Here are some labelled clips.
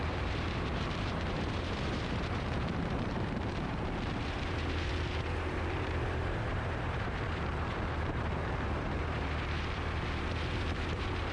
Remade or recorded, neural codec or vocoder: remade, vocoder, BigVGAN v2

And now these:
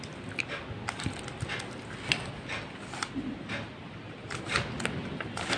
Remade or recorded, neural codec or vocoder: recorded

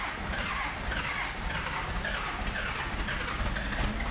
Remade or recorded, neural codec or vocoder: recorded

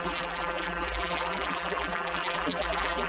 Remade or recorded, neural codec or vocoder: remade, vocoder, BigVGAN v2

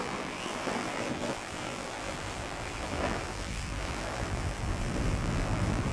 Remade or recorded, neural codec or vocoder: remade, vocoder, BigVGAN v2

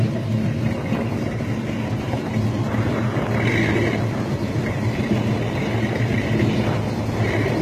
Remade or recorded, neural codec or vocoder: remade, vocoder, BigVGAN v2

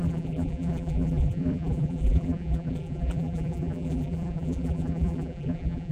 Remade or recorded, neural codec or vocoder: remade, vocoder, BigVGAN v2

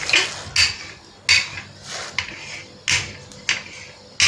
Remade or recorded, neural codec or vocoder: recorded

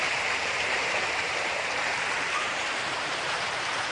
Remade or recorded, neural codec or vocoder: remade, vocoder, BigVGAN v2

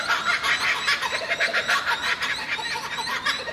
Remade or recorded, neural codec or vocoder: recorded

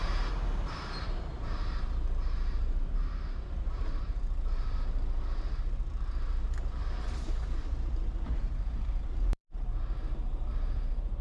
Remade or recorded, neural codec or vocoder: remade, vocoder, BigVGAN v2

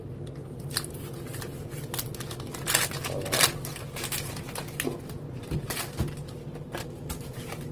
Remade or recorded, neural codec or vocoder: recorded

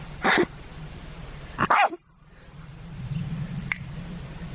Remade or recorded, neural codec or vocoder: remade, vocoder, BigVGAN v2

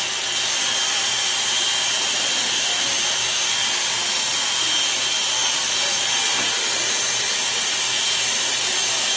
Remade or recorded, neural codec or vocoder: recorded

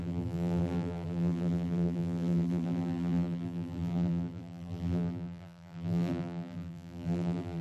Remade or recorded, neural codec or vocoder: remade, vocoder, BigVGAN v2